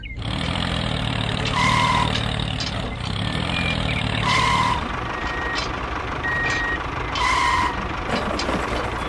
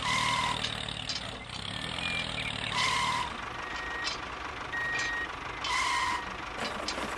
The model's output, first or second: first